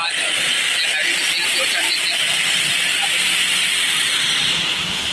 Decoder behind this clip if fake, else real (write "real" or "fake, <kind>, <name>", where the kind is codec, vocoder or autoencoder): real